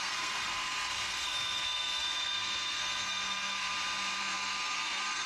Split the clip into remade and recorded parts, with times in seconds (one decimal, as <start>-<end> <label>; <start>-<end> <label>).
0.0-3.7 remade; 3.7-4.2 recorded; 4.2-5.3 remade